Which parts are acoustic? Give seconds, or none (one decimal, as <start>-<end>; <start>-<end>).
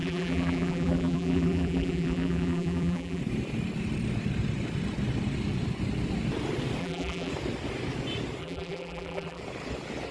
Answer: 3.2-6.8; 7.3-8.4; 9.4-10.1